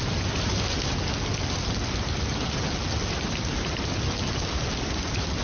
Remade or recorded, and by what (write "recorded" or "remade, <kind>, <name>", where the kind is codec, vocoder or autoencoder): recorded